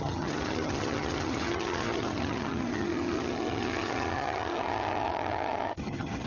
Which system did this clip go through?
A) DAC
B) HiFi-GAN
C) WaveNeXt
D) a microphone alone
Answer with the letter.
B